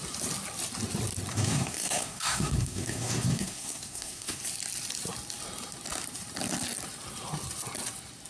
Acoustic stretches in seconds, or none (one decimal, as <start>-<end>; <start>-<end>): 0.0-1.3; 4.4-8.3